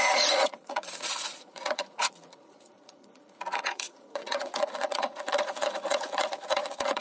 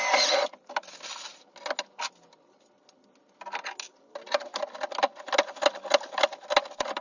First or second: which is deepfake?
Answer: first